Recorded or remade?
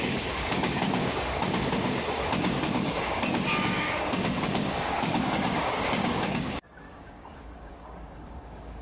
remade